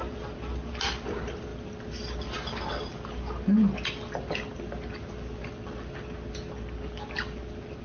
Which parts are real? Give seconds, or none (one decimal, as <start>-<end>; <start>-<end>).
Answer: 0.0-7.8